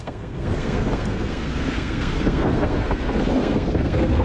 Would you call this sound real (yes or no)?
no